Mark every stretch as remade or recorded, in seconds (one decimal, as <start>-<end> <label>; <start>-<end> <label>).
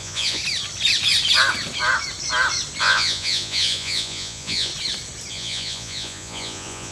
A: 0.0-0.4 remade; 0.4-2.8 recorded; 2.8-4.7 remade; 4.7-5.3 recorded; 5.3-6.9 remade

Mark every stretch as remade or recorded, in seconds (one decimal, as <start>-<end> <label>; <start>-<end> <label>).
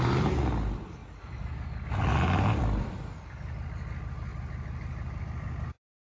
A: 0.0-6.2 recorded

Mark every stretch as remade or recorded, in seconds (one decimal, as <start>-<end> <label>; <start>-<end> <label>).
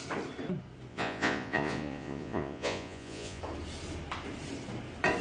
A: 0.0-0.9 recorded; 0.9-3.4 remade; 3.4-5.2 recorded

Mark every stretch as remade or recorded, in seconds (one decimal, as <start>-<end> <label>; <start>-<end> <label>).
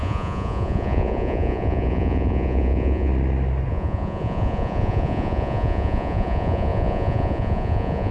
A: 0.0-3.1 remade; 3.1-3.7 recorded; 3.7-8.1 remade